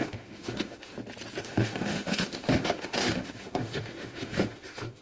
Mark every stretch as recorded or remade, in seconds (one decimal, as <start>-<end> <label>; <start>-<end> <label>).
0.0-0.9 remade; 0.9-1.4 recorded; 1.4-5.0 remade